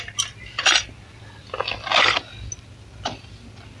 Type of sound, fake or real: real